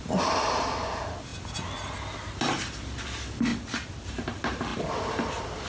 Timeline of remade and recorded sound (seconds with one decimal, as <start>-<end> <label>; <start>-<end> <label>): 0.0-5.7 recorded